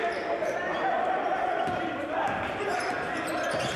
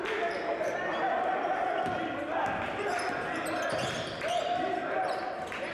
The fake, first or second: first